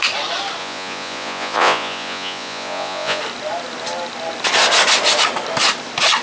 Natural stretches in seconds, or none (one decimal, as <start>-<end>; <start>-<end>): 0.0-0.6; 3.2-6.2